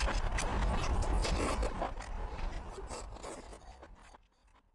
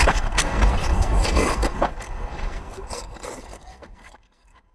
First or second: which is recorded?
first